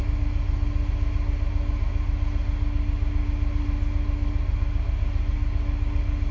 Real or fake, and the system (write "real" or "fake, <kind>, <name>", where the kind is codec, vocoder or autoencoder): real